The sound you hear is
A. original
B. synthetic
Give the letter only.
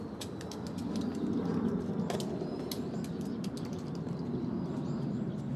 A